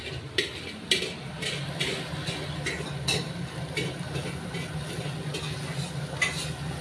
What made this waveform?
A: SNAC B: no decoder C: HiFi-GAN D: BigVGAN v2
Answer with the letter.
B